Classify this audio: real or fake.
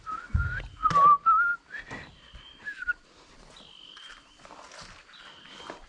real